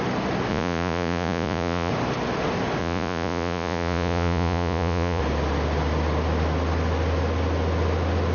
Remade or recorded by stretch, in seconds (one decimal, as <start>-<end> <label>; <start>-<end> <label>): 0.0-0.5 recorded; 0.5-1.9 remade; 1.9-2.8 recorded; 2.8-5.2 remade; 5.2-8.3 recorded